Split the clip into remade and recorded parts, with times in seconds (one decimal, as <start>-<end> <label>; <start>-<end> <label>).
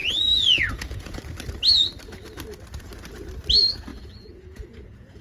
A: 0.0-1.2 remade; 1.2-3.9 recorded; 3.9-5.2 remade